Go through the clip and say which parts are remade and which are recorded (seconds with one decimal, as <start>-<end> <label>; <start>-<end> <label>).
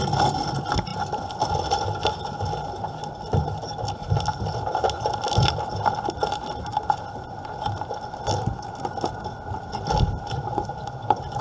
0.0-11.4 recorded